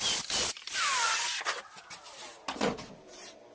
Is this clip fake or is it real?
real